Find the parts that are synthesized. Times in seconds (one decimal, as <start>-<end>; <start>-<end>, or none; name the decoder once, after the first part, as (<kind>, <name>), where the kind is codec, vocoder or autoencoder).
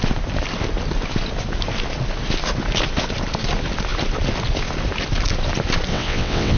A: 5.9-6.6 (vocoder, WaveNeXt)